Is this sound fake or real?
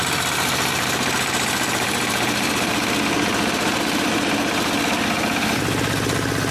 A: real